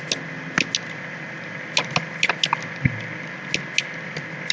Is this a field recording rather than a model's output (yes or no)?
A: yes